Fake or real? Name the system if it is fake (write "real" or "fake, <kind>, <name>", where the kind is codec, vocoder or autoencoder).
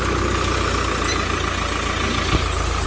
real